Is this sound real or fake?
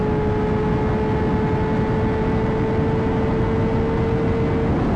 real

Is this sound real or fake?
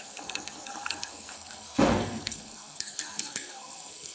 fake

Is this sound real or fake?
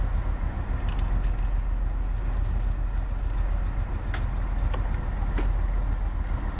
real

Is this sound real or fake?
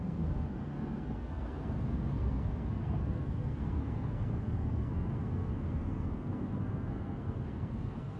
fake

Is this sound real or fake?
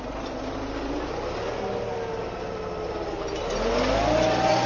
real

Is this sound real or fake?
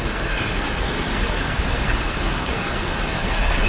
fake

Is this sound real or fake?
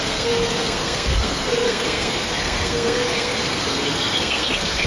fake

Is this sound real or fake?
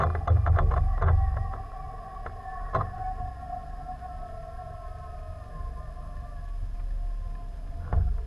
real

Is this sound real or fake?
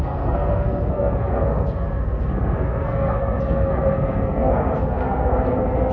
fake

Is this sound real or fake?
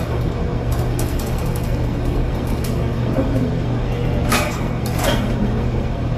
fake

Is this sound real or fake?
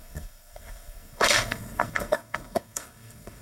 fake